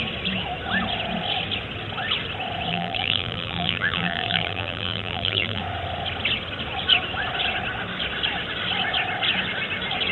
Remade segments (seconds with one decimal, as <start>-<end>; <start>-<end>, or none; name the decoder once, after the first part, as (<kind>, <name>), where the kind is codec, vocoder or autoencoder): 2.7-5.6 (vocoder, BigVGAN v2)